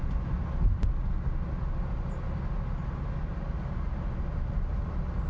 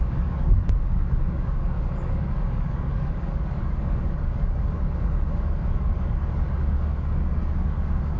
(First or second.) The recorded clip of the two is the first